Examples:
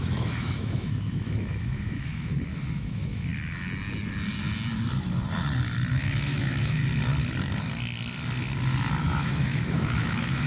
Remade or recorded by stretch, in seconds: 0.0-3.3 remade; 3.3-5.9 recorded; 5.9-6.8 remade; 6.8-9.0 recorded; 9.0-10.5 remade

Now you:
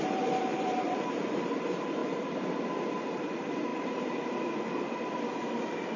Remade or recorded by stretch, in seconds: 0.0-2.0 remade; 2.0-3.1 recorded; 3.1-6.0 remade

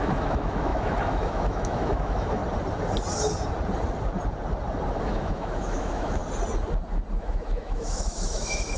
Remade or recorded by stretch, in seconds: 0.0-2.4 remade; 2.4-5.0 recorded; 5.0-6.2 remade; 6.2-7.2 recorded; 7.2-8.8 remade

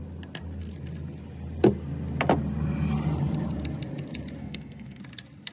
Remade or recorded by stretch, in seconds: 0.0-4.4 recorded; 4.4-5.0 remade; 5.0-5.5 recorded